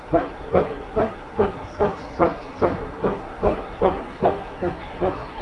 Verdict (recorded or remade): remade